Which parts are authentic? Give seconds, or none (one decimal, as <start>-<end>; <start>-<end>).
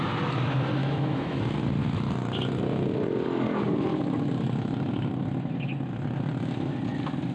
0.0-0.8; 1.4-7.3